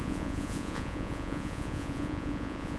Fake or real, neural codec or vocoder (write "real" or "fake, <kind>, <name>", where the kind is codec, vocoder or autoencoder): fake, vocoder, Vocos